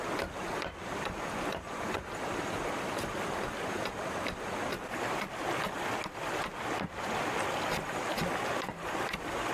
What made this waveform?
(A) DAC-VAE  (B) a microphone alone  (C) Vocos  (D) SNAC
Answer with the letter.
B